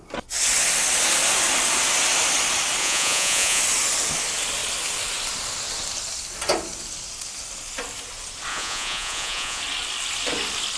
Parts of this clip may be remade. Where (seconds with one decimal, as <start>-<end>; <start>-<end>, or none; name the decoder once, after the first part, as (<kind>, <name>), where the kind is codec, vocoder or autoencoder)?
2.8-3.6 (vocoder, Vocos); 8.5-9.6